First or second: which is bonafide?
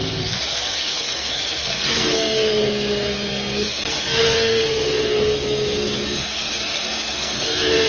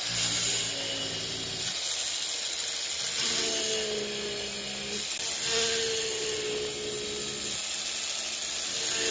second